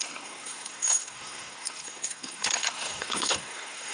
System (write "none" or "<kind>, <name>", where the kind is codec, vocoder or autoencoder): codec, SNAC